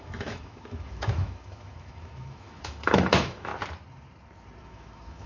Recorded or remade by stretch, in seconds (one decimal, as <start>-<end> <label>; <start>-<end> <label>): 0.0-3.5 remade; 3.5-4.6 recorded; 4.6-5.3 remade